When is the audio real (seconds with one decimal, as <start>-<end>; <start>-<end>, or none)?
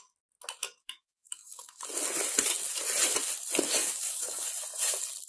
0.0-0.6; 1.8-3.8; 4.5-5.3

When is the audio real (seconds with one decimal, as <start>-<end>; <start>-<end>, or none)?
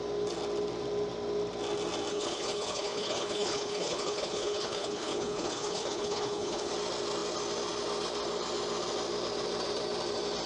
0.0-2.1; 6.7-10.5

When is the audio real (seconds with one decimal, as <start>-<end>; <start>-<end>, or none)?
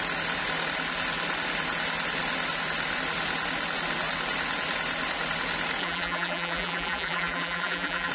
0.0-5.8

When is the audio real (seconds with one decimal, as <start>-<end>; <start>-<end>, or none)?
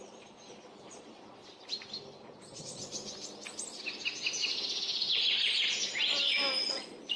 1.4-2.2; 2.8-6.7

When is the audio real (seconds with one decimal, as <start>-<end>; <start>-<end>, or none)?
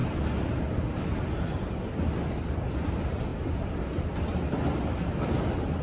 0.0-1.0; 3.3-4.8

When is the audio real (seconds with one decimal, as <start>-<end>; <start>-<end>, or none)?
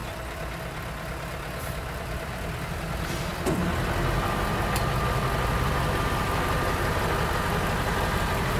0.0-8.6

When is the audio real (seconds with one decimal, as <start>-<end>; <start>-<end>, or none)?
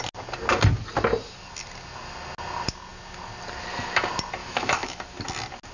0.0-4.4; 5.0-5.7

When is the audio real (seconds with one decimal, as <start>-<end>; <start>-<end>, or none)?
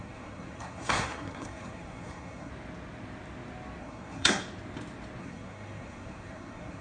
2.5-3.8; 4.4-5.2